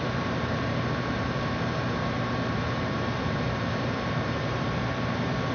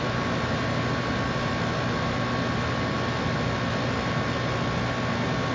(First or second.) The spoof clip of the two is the first